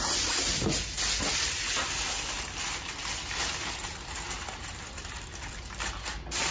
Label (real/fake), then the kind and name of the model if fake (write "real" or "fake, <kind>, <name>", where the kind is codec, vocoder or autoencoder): real